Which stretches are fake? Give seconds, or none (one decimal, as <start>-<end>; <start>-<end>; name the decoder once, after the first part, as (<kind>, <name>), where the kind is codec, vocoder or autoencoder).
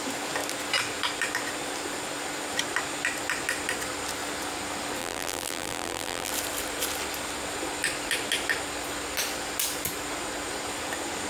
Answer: 5.0-6.3 (vocoder, BigVGAN v2)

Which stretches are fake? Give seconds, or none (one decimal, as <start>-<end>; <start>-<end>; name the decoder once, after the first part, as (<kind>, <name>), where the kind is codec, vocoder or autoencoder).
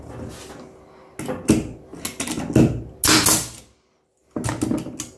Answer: none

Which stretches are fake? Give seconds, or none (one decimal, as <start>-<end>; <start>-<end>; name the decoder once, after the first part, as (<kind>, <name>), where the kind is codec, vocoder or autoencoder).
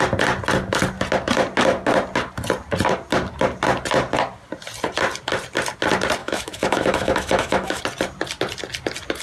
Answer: 6.2-7.8 (autoencoder, DAC-VAE)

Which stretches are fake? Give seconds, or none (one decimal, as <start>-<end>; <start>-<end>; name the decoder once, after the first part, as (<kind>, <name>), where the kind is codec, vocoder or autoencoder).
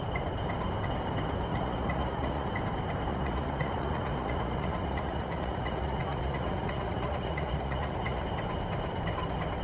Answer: 1.5-2.5 (vocoder, Vocos); 3.1-8.2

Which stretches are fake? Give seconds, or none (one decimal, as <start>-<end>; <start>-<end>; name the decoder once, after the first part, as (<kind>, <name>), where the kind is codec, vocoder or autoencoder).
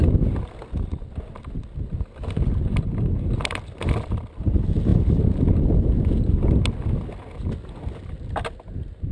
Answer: none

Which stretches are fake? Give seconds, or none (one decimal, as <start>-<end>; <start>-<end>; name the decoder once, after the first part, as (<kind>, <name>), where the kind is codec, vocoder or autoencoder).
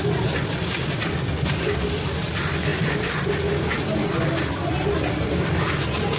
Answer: none